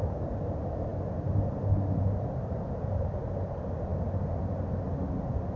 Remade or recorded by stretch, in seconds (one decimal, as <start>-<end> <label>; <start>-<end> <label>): 0.0-5.6 recorded